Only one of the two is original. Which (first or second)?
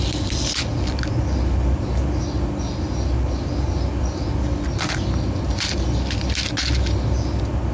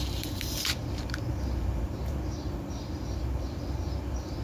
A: first